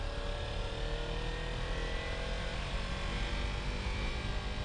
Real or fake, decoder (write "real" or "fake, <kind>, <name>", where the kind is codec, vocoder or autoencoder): real